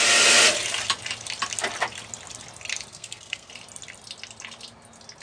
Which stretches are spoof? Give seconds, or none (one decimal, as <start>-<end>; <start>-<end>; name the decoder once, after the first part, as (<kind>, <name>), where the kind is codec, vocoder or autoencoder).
2.9-3.5 (codec, SNAC)